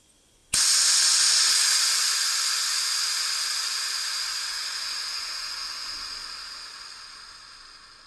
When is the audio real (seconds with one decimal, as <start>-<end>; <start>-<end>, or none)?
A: 0.4-4.5; 6.2-8.1

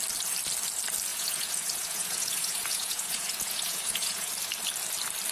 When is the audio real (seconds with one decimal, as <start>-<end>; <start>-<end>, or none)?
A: 0.0-1.1; 4.3-5.3